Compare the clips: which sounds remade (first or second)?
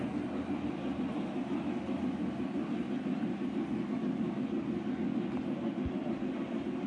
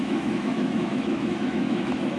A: second